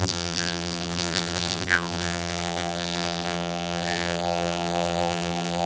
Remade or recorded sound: remade